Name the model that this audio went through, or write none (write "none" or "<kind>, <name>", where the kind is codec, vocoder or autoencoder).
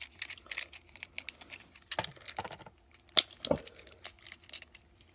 none